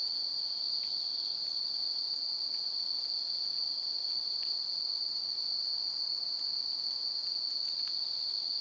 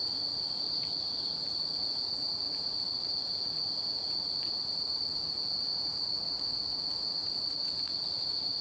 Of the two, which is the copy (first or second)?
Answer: second